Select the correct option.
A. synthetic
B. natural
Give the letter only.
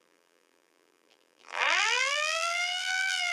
A